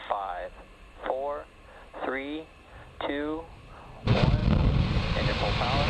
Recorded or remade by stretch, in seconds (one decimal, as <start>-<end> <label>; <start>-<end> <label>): 0.0-5.9 recorded